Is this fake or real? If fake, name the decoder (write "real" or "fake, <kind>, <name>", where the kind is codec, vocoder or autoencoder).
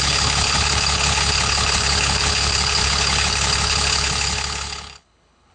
fake, codec, HILCodec